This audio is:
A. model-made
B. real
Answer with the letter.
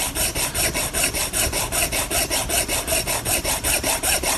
B